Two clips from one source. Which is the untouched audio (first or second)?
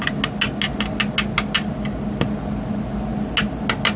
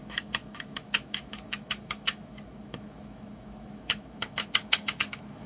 first